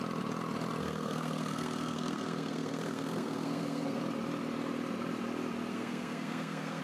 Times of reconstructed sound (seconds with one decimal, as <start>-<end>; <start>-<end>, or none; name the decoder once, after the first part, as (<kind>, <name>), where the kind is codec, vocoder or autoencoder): 0.8-4.0 (codec, SNAC); 5.7-6.8